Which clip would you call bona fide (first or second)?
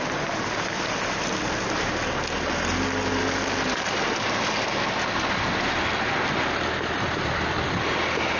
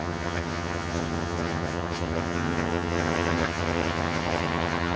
first